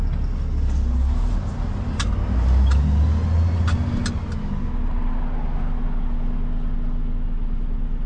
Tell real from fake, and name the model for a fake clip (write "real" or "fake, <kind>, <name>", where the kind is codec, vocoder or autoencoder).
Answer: real